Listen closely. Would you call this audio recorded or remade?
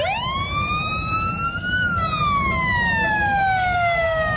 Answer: recorded